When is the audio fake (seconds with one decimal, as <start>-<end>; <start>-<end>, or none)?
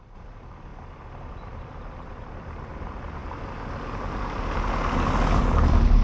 0.0-0.7; 1.3-3.2; 5.4-6.0